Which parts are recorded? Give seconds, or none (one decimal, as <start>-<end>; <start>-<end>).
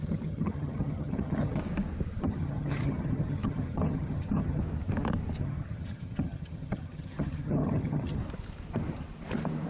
1.6-2.2; 4.6-5.4; 8.2-9.7